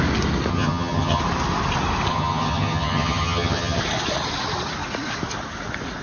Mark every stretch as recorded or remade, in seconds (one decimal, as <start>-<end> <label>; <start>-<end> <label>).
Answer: 0.0-0.5 recorded; 0.5-1.2 remade; 1.2-2.1 recorded; 2.1-3.8 remade; 3.8-6.0 recorded